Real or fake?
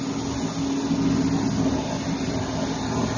real